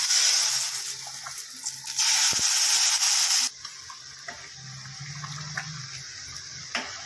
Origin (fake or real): real